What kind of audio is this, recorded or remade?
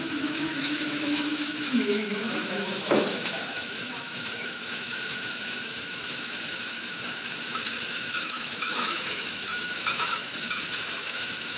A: remade